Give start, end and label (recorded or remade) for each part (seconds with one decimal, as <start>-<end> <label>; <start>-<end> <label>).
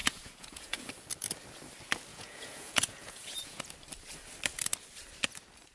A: 0.0-0.9 remade; 0.9-2.1 recorded; 2.1-3.6 remade; 3.6-5.7 recorded